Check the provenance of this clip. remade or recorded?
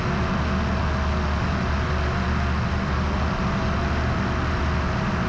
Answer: recorded